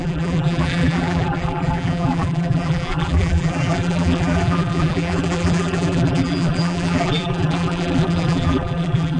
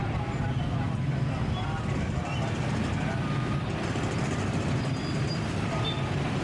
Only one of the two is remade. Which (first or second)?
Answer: first